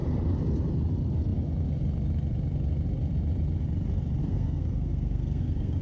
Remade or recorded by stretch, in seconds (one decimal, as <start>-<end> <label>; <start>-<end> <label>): 0.0-4.2 recorded; 4.2-5.8 remade